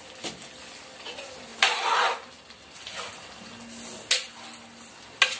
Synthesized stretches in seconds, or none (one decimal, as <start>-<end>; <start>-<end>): none